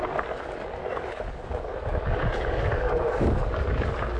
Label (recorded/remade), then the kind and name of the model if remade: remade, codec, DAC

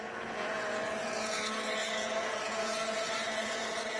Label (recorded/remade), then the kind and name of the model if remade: remade, vocoder, Vocos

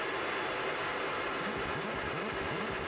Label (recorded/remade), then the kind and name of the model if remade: recorded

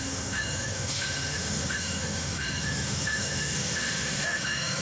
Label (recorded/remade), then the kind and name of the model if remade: remade, autoencoder, DAC-VAE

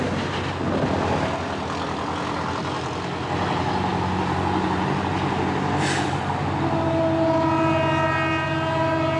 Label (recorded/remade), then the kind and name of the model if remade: recorded